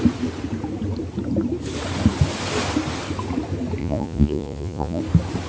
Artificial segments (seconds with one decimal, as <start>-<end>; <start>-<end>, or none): 3.8-5.0